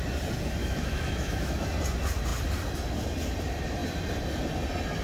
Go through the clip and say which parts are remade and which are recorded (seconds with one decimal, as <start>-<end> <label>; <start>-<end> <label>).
0.0-0.6 recorded; 0.6-1.6 remade; 1.6-5.0 recorded